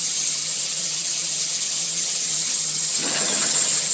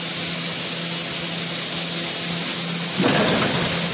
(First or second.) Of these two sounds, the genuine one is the second